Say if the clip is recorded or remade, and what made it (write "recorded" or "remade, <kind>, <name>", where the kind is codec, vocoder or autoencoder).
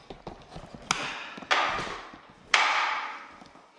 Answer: recorded